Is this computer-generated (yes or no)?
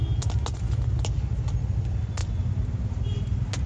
no